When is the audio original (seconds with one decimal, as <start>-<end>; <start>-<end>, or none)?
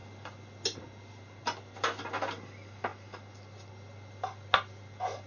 0.0-5.3